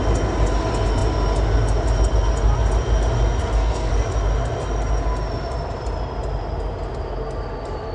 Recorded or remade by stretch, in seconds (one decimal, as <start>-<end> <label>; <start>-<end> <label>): 0.0-3.4 recorded; 3.4-3.9 remade; 3.9-7.9 recorded

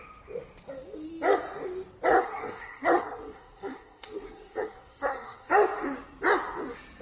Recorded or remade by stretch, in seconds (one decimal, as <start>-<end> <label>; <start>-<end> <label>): 0.0-2.1 recorded; 2.1-5.5 remade; 5.5-7.0 recorded